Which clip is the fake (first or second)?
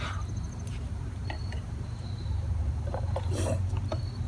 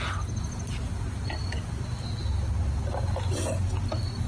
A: first